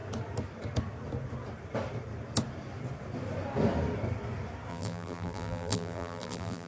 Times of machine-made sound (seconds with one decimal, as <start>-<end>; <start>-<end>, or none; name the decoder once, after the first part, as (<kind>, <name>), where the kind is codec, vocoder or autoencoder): 4.7-6.7 (vocoder, BigVGAN v2)